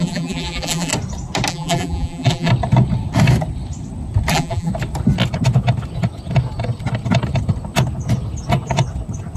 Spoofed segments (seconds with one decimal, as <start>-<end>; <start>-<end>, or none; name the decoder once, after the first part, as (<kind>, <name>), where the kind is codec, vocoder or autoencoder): 0.0-0.9 (vocoder, BigVGAN v2); 1.5-2.5; 4.3-4.7